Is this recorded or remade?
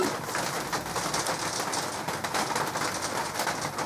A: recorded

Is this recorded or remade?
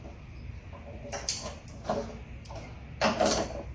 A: recorded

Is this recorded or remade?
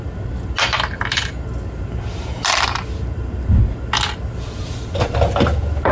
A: recorded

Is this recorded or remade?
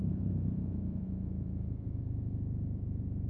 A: remade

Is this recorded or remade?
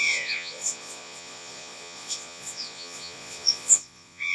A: remade